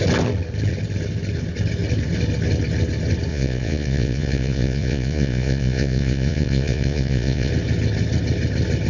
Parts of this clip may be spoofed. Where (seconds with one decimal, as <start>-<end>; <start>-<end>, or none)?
3.3-7.5